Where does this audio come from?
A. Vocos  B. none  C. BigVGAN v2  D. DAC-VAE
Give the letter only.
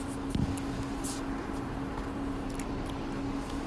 B